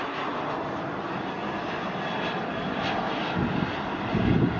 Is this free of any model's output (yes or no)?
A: yes